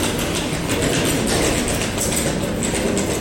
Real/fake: real